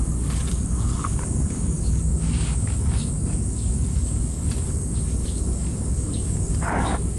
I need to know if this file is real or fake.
fake